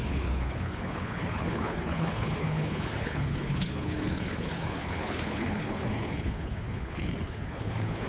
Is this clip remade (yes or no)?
yes